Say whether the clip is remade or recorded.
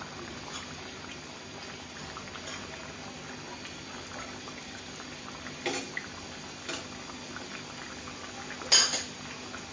recorded